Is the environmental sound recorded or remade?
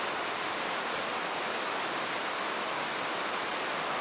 recorded